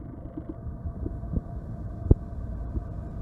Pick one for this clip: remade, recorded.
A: remade